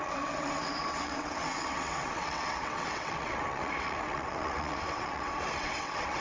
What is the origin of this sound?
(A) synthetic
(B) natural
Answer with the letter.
A